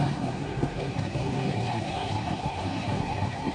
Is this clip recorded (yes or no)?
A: no